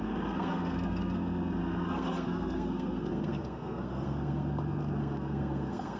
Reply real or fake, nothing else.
fake